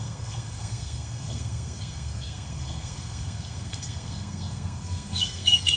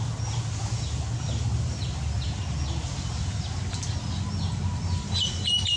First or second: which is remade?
first